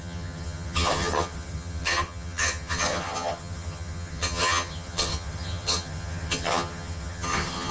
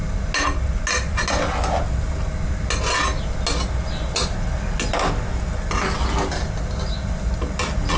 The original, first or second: second